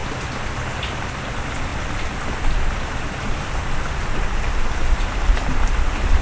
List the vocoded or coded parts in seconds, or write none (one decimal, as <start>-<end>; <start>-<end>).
none